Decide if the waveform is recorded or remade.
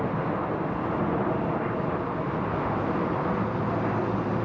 recorded